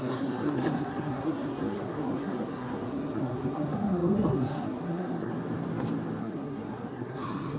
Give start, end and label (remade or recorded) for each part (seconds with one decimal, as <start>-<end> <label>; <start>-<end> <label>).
0.0-5.3 remade; 5.3-6.2 recorded; 6.2-7.6 remade